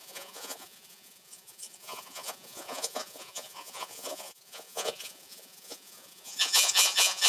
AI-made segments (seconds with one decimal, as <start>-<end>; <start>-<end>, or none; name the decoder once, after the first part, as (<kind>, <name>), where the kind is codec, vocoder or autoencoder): 0.0-7.3 (vocoder, Vocos)